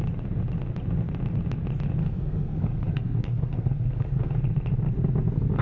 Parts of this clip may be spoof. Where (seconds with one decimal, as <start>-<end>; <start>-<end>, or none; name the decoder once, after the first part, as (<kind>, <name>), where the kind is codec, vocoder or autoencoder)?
2.0-4.4 (codec, SNAC)